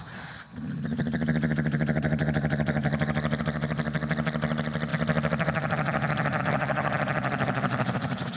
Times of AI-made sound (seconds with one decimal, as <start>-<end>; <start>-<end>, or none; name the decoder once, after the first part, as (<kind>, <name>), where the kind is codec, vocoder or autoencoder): none